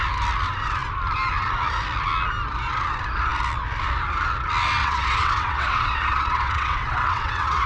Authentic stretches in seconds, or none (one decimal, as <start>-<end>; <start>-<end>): 0.0-4.8